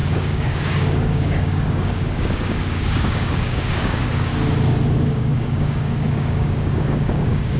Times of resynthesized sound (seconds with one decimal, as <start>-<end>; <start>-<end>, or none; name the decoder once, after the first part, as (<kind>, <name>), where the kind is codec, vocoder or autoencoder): 0.0-4.3 (codec, DAC); 5.1-7.6